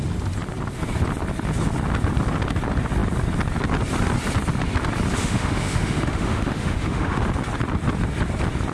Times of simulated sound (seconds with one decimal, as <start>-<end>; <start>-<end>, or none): 5.2-7.2

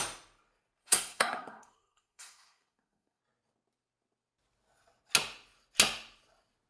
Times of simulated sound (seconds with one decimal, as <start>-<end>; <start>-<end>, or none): 0.8-3.2

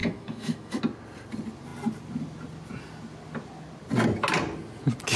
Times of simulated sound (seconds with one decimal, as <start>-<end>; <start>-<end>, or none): 0.0-0.8

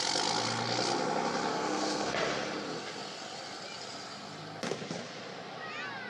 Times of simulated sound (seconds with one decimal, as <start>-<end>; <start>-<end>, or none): 1.5-2.1

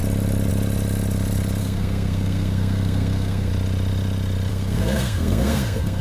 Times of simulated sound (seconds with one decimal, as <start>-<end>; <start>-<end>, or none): 1.6-3.5; 4.5-6.0

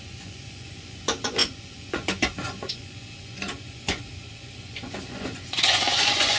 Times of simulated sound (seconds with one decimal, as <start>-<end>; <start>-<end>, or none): 0.0-6.4